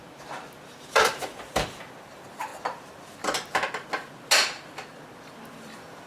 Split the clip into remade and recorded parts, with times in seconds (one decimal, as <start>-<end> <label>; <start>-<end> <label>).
0.0-0.7 recorded; 0.7-2.5 remade; 2.5-5.5 recorded; 5.5-6.1 remade